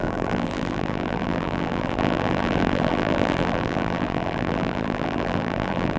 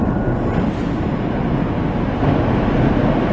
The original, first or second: second